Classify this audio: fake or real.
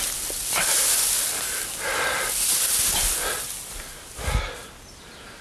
real